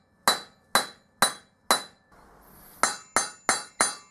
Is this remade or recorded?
recorded